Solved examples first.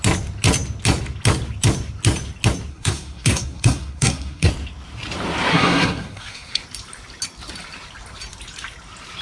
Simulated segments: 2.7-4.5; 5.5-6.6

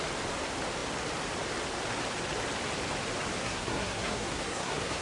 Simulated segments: 3.4-5.0

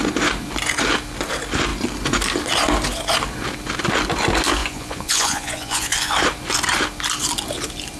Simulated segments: 4.6-6.1

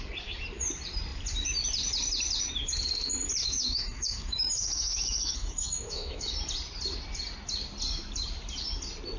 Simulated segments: 3.4-6.3